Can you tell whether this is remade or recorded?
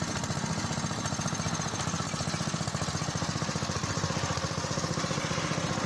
recorded